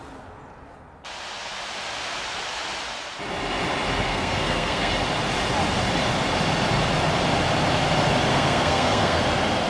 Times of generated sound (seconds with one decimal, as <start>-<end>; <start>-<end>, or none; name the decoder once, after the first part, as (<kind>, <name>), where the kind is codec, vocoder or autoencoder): 4.1-4.9 (codec, SNAC); 8.3-9.2